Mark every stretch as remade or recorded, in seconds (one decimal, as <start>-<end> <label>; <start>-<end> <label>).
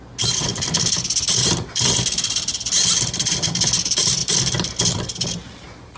0.0-6.0 recorded